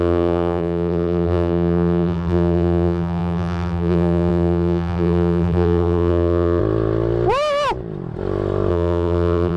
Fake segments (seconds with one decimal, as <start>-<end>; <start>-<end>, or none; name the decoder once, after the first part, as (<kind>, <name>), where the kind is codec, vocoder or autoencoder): 0.0-6.6 (vocoder, BigVGAN v2); 8.7-9.6